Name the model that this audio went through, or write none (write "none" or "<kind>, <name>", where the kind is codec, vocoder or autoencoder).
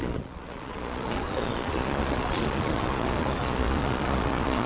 vocoder, Vocos